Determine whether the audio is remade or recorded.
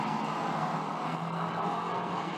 remade